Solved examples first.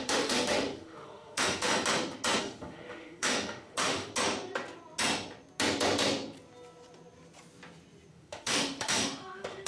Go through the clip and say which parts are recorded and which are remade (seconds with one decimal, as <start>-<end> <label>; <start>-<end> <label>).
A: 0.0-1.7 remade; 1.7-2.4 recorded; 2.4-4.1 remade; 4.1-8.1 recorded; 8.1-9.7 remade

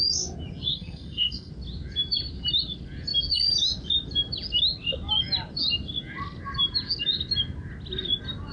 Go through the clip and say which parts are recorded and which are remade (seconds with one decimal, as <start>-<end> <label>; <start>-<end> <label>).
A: 0.0-0.7 recorded; 0.7-1.5 remade; 1.5-8.5 recorded

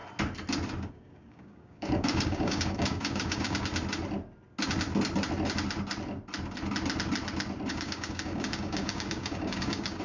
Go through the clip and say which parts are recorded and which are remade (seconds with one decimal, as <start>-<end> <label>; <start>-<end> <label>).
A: 0.0-0.9 recorded; 0.9-3.7 remade; 3.7-7.7 recorded; 7.7-10.0 remade

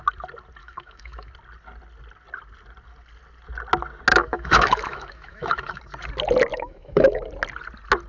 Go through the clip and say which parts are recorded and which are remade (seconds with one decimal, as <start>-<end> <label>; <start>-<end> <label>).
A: 0.0-0.6 recorded; 0.6-1.3 remade; 1.3-4.1 recorded; 4.1-5.8 remade; 5.8-6.5 recorded; 6.5-7.2 remade; 7.2-8.1 recorded

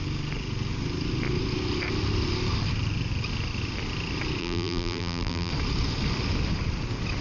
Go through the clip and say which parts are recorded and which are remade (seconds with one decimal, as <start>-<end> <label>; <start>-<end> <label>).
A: 0.0-4.4 recorded; 4.4-5.5 remade; 5.5-7.2 recorded

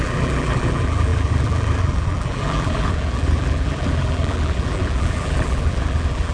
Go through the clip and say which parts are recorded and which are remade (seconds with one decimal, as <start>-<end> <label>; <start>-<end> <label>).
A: 0.0-6.3 remade